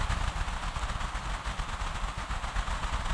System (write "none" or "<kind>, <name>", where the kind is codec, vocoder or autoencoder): none